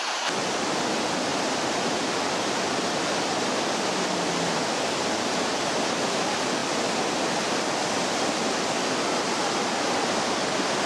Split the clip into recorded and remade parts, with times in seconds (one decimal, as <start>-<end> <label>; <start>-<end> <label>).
0.0-10.9 recorded